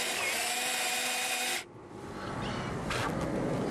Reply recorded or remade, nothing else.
recorded